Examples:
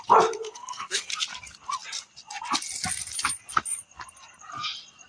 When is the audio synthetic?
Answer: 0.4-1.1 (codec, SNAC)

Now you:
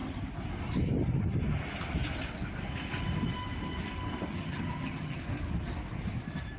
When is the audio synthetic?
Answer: 4.3-5.2 (vocoder, HiFi-GAN)

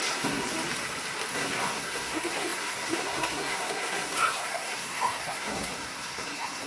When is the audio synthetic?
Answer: 0.0-0.5 (codec, SNAC); 1.3-6.7